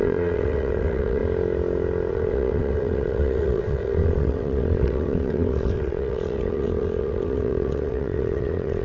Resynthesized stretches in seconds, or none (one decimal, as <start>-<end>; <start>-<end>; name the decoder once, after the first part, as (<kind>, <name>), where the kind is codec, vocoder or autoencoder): 0.0-1.2 (vocoder, WaveNeXt); 2.1-8.8